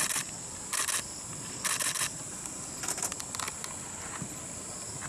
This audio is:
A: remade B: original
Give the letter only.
B